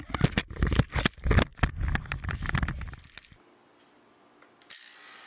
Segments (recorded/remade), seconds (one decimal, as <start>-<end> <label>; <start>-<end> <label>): 0.0-5.3 recorded